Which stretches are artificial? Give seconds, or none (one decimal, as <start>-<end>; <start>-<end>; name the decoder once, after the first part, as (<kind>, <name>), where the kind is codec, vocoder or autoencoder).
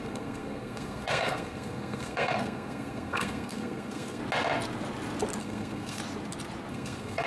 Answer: 0.0-4.2 (codec, SNAC); 5.4-6.0; 6.7-7.3